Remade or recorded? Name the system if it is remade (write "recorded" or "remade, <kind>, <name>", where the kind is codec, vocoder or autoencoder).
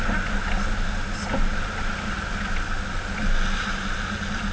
recorded